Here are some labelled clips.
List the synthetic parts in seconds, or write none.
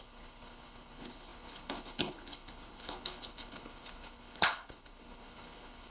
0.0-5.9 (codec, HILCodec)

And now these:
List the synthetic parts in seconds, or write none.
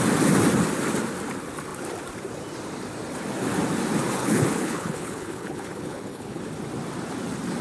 4.2-6.4 (codec, HILCodec)